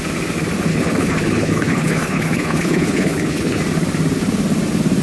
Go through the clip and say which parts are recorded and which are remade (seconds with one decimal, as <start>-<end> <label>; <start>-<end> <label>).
0.0-0.7 recorded; 0.7-3.6 remade; 3.6-5.0 recorded